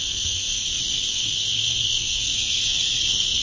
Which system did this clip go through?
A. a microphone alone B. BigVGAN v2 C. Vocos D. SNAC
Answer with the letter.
D